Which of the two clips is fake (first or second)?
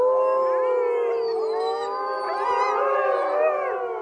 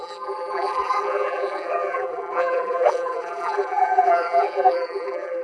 second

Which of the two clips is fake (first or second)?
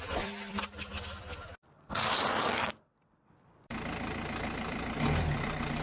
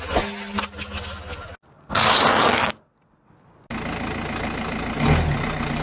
first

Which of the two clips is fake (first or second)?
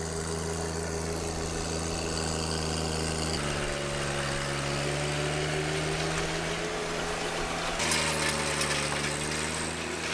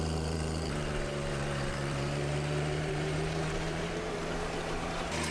second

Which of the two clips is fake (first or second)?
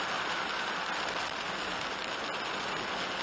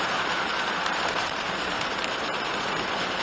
second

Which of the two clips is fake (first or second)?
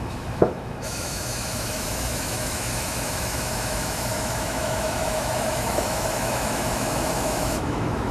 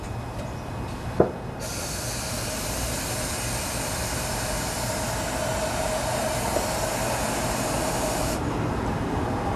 first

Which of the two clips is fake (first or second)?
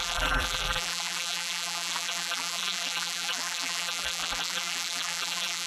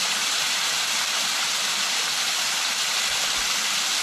first